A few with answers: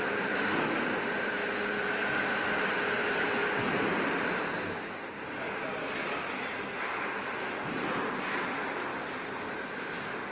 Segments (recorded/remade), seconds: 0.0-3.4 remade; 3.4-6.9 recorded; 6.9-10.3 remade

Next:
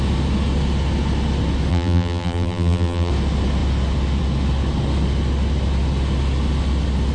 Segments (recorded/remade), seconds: 0.0-1.7 recorded; 1.7-3.1 remade; 3.1-7.1 recorded

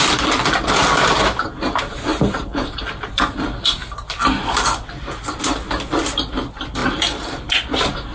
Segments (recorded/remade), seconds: 0.0-2.1 recorded; 2.1-2.8 remade; 2.8-6.8 recorded; 6.8-7.4 remade; 7.4-8.1 recorded

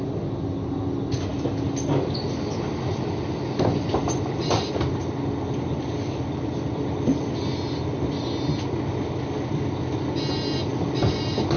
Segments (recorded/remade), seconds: 0.0-4.0 recorded; 4.0-8.5 remade; 8.5-10.7 recorded; 10.7-11.2 remade; 11.2-11.6 recorded

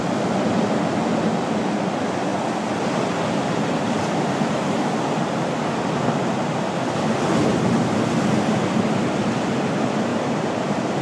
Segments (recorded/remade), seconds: 0.0-10.1 recorded; 10.1-11.0 remade

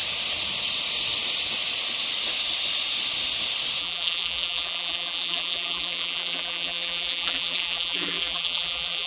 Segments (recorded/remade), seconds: 0.0-3.8 recorded; 3.8-9.1 remade